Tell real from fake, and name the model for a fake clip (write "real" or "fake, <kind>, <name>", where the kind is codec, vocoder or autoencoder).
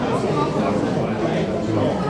real